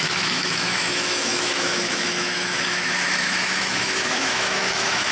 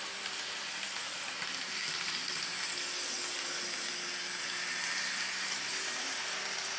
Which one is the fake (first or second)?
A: first